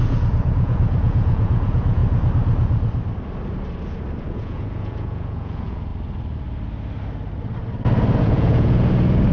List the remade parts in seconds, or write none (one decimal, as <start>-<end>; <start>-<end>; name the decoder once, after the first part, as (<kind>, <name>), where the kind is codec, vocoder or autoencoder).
0.0-2.0 (vocoder, Vocos); 4.2-5.9; 8.2-9.3